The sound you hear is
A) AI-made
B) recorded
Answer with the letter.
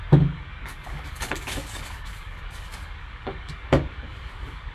A